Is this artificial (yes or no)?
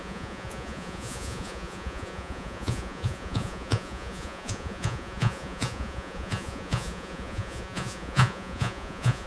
yes